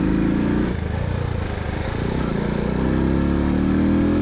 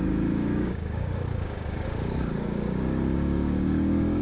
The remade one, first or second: second